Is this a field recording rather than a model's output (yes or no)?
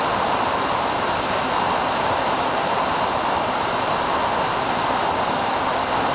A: no